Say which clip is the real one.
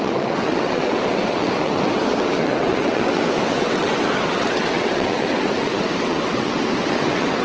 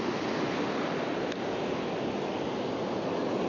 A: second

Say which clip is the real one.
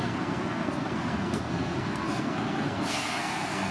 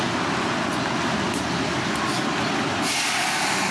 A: second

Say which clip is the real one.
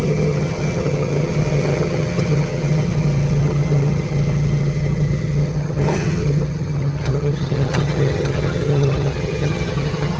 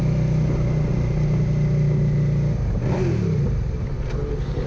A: second